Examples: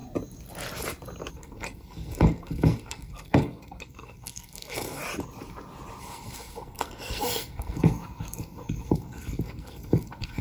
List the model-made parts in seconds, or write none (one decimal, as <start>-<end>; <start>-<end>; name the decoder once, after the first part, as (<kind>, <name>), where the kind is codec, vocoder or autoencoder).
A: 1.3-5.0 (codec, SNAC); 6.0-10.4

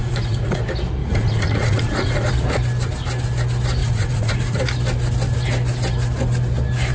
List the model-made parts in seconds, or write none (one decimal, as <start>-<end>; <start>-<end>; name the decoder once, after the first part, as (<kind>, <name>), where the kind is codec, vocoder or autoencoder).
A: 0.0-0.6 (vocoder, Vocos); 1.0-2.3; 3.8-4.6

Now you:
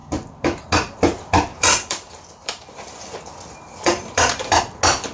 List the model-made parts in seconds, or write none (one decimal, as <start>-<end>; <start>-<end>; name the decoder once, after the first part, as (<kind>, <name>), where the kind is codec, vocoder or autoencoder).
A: 1.5-4.6 (vocoder, BigVGAN v2)